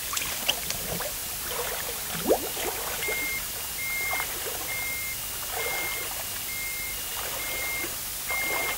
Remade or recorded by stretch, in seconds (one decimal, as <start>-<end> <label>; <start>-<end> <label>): 0.0-8.8 recorded